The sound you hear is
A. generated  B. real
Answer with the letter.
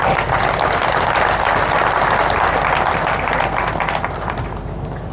B